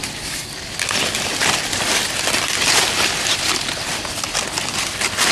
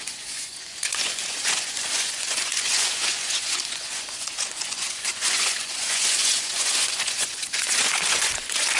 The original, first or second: first